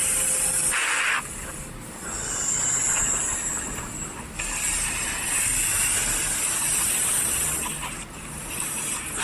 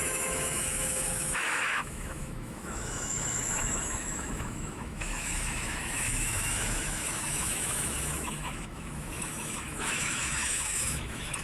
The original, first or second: first